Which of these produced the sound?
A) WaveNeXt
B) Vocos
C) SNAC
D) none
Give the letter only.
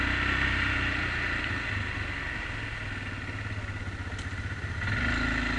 D